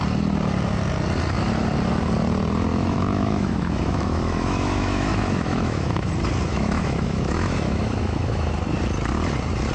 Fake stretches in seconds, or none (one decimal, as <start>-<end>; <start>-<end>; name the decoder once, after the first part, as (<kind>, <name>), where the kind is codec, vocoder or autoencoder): 2.7-6.1 (autoencoder, DAC-VAE); 6.5-8.5